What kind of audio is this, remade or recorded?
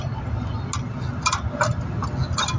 recorded